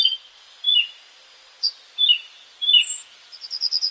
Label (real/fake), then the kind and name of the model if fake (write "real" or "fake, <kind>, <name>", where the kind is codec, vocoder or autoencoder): real